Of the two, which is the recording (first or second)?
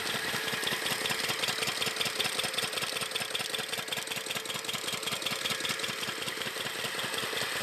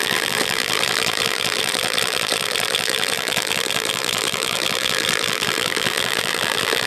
first